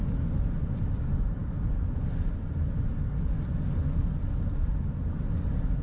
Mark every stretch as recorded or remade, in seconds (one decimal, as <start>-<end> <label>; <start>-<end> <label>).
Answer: 0.0-5.8 recorded